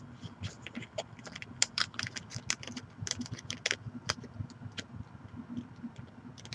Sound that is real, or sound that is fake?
real